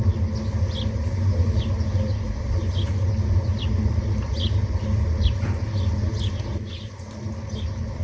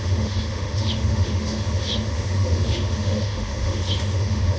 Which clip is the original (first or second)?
first